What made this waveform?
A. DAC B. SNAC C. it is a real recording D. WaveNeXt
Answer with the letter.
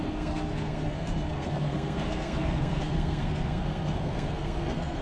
B